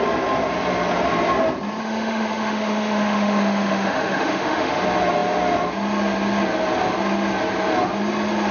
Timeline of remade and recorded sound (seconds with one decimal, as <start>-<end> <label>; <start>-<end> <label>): 0.0-1.8 recorded; 1.8-4.8 remade; 4.8-8.5 recorded